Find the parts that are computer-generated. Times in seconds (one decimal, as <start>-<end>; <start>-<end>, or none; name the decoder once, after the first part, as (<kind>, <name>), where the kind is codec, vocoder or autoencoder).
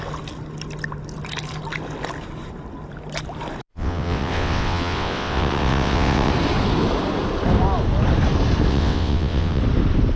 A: 3.7-6.3 (vocoder, WaveNeXt); 8.7-9.6